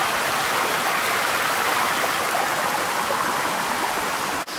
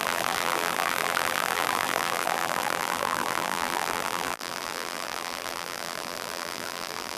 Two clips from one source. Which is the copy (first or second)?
second